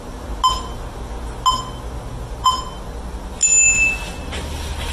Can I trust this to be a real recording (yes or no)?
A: yes